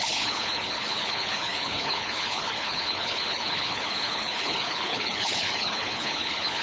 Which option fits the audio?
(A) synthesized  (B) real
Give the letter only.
A